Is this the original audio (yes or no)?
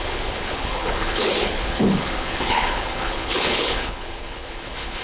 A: no